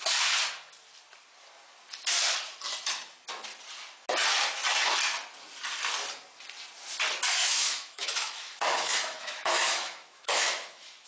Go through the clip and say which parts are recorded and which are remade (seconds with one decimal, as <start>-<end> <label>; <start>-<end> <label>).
0.0-7.4 recorded; 7.4-11.1 remade